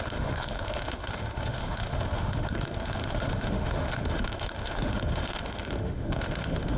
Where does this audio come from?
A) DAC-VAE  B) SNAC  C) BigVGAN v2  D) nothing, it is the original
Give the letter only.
A